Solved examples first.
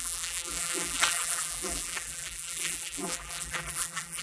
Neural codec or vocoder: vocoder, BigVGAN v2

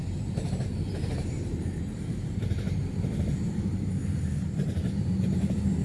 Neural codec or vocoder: vocoder, BigVGAN v2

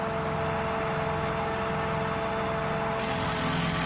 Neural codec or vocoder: none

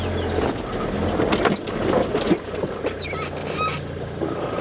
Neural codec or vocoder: none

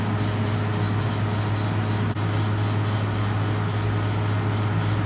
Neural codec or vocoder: none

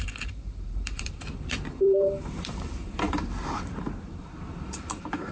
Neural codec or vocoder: vocoder, BigVGAN v2